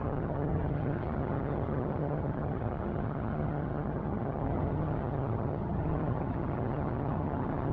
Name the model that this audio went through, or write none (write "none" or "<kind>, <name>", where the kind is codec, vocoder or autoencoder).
vocoder, HiFi-GAN